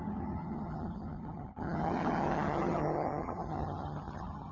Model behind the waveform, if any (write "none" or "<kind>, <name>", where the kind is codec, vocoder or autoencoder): vocoder, HiFi-GAN